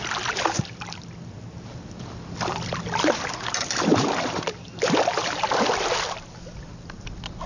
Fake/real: real